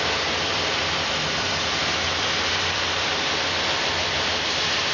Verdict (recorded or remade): remade